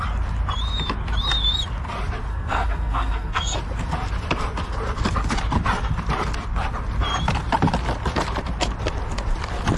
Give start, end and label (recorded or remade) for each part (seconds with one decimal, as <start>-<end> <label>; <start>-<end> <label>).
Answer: 0.0-2.3 recorded; 2.3-3.6 remade; 3.6-9.8 recorded